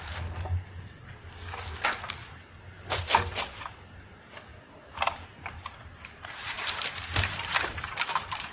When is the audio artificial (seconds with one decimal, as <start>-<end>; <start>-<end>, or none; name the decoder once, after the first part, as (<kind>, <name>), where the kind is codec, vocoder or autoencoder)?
2.2-3.0 (vocoder, BigVGAN v2); 4.5-8.5